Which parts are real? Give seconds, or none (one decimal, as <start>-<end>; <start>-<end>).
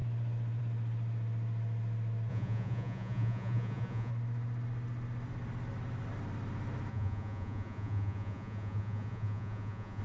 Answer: 0.0-2.3; 4.1-6.9